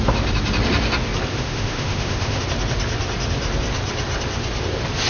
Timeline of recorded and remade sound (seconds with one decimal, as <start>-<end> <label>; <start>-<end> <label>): 0.0-1.3 recorded; 1.3-2.4 remade; 2.4-5.1 recorded